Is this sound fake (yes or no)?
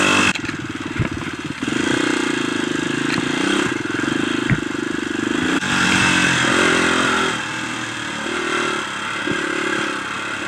no